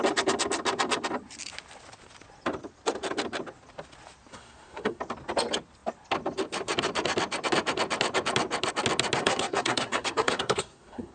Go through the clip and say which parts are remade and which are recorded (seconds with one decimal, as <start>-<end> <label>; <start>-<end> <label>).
0.0-4.3 recorded; 4.3-5.0 remade; 5.0-9.2 recorded; 9.2-11.1 remade